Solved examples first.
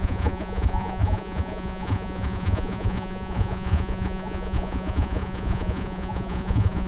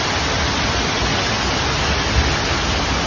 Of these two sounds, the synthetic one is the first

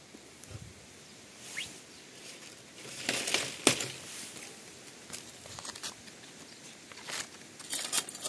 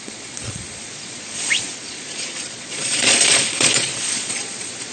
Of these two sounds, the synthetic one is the second